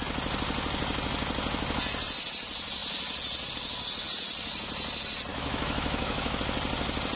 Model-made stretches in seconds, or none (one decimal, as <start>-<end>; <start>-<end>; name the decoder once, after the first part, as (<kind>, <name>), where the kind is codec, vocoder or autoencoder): 5.3-6.4 (autoencoder, DAC-VAE)